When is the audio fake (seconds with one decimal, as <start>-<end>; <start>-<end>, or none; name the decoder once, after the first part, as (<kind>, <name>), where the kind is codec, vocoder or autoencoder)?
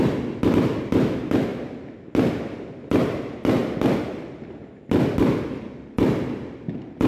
none